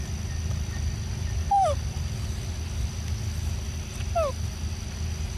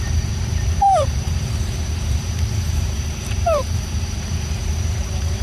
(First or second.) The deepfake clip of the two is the second